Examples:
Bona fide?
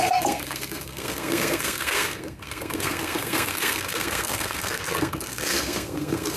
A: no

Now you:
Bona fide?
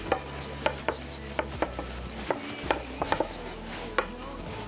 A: yes